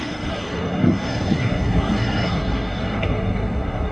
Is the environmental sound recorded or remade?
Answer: remade